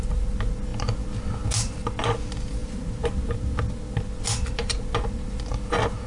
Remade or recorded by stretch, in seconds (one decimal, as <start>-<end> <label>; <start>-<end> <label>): 0.0-6.1 recorded